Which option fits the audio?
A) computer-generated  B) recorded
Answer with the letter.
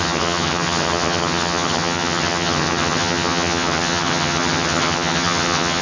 A